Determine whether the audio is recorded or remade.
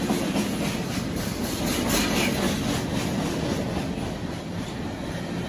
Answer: recorded